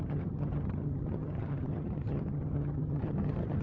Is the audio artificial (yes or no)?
yes